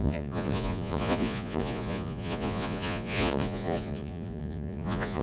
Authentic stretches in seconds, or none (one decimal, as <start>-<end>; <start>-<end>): none